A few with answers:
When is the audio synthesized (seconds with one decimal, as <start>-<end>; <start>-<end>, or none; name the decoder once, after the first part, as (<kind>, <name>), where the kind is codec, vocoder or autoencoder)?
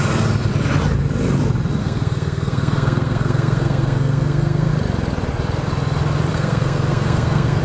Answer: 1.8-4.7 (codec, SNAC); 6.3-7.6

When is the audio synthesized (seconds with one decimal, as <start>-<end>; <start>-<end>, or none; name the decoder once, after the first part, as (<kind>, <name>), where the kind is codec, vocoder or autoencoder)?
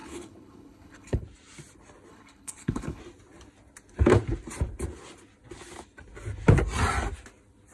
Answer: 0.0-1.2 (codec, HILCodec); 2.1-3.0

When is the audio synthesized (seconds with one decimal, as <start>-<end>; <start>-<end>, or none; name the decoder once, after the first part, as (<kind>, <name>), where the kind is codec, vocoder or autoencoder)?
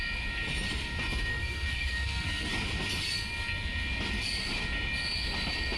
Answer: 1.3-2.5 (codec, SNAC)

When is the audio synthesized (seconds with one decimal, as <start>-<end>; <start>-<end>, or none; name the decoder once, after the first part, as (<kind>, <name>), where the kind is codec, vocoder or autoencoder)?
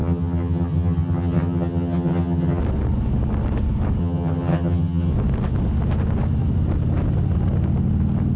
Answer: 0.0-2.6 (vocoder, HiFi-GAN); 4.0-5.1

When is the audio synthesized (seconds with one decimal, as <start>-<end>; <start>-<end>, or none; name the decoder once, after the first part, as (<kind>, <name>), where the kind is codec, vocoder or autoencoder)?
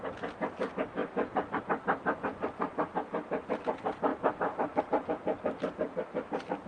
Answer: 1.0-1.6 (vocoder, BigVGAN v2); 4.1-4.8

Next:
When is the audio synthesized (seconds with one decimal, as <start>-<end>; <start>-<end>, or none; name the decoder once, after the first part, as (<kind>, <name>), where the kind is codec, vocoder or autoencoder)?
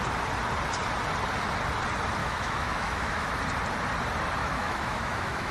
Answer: 2.2-3.3 (autoencoder, DAC-VAE); 4.4-5.5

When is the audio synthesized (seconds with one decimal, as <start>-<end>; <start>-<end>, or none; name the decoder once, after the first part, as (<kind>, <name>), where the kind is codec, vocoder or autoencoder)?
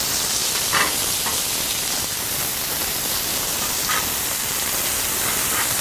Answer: 2.8-3.8 (vocoder, BigVGAN v2)